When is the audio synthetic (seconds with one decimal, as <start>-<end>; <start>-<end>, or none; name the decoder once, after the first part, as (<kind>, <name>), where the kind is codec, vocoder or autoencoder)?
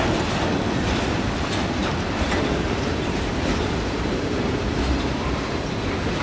1.8-4.9 (vocoder, BigVGAN v2)